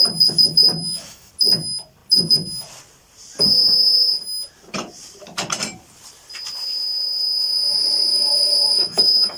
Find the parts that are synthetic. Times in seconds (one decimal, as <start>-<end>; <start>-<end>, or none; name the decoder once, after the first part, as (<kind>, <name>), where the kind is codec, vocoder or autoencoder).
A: 0.8-1.3 (autoencoder, DAC-VAE); 8.1-9.4